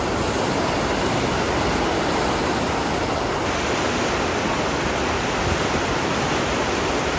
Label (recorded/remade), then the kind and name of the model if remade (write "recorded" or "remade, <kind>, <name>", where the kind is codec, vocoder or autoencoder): recorded